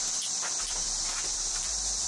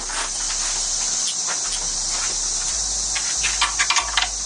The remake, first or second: first